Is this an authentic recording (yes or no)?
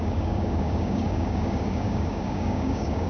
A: no